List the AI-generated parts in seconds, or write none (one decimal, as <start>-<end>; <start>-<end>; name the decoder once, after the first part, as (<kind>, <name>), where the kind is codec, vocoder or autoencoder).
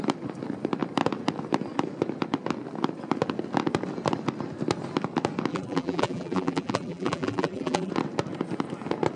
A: 5.5-7.9 (vocoder, BigVGAN v2)